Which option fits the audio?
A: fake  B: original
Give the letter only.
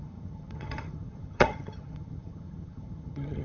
A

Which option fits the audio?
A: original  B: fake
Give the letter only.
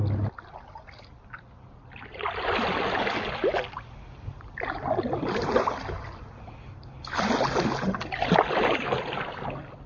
A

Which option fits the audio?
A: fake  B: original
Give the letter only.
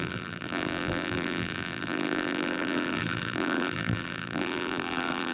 A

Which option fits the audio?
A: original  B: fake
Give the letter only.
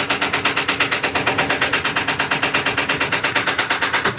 A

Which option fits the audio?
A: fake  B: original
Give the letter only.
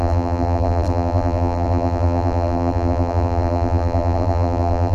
A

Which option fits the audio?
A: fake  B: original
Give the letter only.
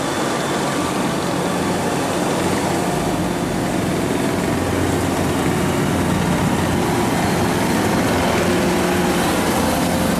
B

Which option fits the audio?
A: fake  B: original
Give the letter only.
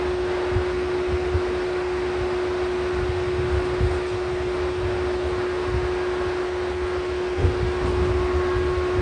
B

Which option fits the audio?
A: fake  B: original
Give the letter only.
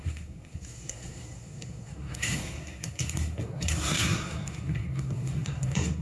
A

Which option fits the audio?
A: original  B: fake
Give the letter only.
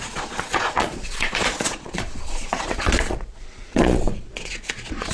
B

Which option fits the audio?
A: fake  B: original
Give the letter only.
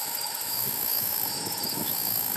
A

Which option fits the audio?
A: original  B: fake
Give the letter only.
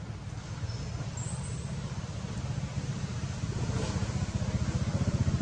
A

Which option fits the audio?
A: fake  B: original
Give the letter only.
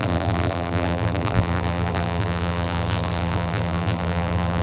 A